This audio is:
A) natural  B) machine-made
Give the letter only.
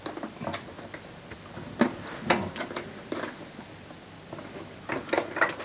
A